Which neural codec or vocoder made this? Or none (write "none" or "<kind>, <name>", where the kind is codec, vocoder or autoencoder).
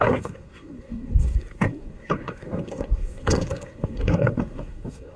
codec, SNAC